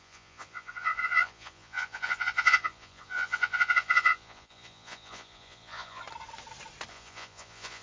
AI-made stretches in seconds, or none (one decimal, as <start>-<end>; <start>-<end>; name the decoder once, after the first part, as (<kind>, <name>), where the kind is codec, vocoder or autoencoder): 0.0-6.0 (vocoder, Vocos); 6.9-7.8